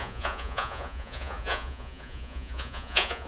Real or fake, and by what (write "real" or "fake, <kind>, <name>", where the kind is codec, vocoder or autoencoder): fake, vocoder, Vocos